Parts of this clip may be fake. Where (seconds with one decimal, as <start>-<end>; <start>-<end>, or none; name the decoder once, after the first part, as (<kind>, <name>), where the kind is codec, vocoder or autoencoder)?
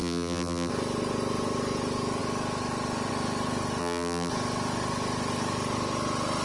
0.0-0.7 (vocoder, BigVGAN v2); 3.8-4.3